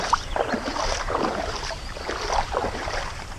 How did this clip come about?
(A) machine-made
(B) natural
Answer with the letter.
B